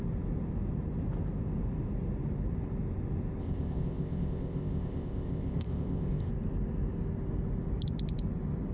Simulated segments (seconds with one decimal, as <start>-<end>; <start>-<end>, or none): 3.4-6.3